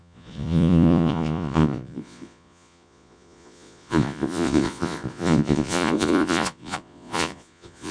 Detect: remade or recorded remade